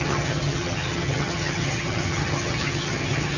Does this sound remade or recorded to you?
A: remade